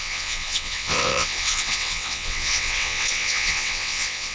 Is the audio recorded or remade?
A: remade